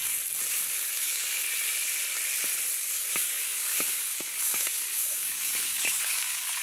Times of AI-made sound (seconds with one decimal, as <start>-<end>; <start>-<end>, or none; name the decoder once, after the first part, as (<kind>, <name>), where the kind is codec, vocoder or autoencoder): 1.0-1.4 (codec, DAC); 2.8-6.6